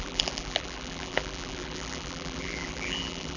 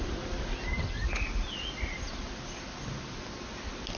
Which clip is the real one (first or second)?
second